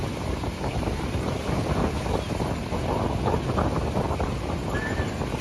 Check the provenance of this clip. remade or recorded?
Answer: recorded